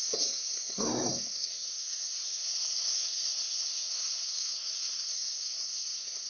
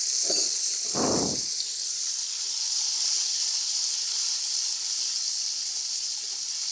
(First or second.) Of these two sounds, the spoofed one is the first